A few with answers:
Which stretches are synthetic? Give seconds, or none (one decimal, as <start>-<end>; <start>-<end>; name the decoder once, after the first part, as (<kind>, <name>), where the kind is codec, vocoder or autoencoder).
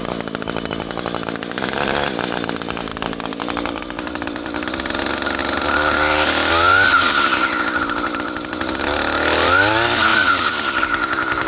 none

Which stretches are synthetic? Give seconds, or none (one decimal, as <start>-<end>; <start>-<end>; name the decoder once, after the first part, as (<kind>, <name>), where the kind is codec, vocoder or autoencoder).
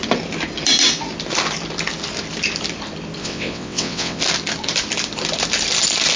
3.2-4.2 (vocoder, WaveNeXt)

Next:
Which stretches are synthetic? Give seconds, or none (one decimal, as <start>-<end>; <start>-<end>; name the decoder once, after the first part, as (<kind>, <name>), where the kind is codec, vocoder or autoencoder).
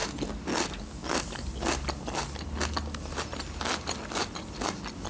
none